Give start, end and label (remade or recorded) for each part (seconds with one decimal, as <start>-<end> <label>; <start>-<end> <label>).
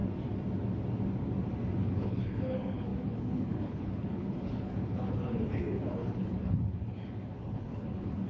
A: 0.0-1.8 recorded; 1.8-8.3 remade